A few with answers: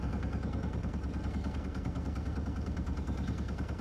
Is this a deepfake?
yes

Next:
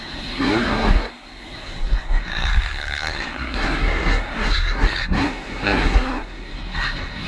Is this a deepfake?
yes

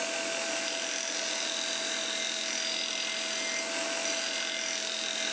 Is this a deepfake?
no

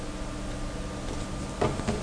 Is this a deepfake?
no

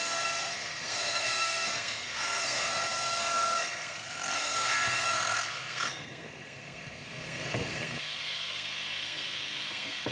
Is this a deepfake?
yes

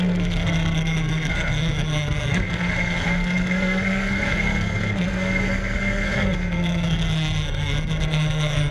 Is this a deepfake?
yes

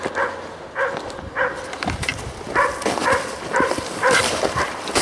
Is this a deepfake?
no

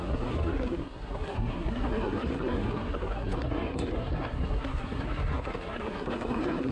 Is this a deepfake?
yes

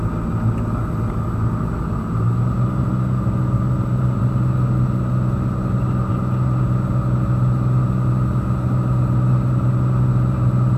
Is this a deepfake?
no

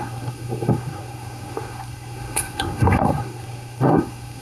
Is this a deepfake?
yes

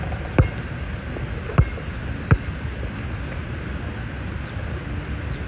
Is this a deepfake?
no